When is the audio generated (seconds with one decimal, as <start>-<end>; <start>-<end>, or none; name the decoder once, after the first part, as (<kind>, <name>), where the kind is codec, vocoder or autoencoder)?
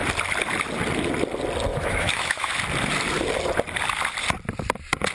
1.7-2.5 (autoencoder, DAC-VAE)